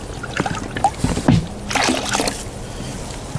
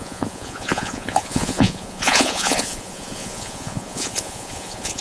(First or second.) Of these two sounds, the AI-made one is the second